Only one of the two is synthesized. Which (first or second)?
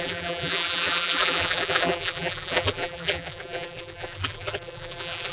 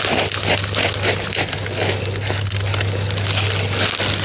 first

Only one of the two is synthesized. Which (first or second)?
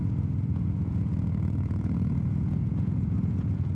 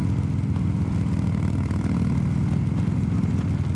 first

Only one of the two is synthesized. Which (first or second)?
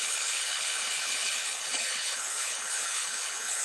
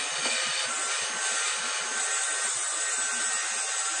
first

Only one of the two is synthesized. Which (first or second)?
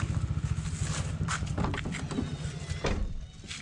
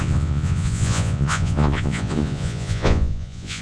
second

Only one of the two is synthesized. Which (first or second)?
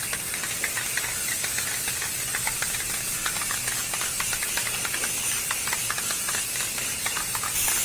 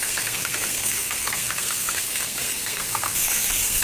second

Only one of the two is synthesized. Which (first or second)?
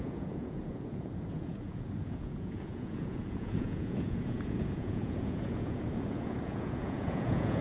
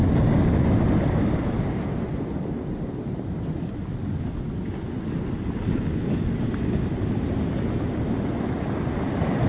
first